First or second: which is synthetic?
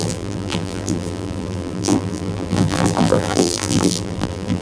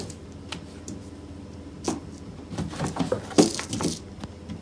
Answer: first